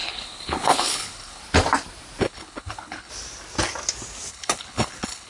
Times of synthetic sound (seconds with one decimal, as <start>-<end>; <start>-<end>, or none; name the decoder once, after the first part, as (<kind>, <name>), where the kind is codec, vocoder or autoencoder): 0.0-1.4 (codec, HILCodec); 2.2-3.1; 4.3-5.3